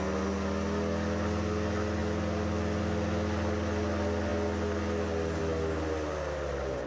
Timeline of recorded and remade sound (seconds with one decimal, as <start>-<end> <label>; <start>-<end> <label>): 0.0-6.9 recorded